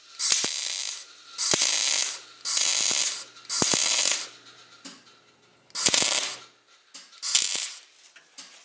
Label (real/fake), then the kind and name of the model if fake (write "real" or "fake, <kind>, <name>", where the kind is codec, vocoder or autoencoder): real